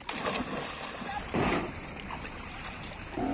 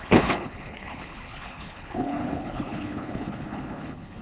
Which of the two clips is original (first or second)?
first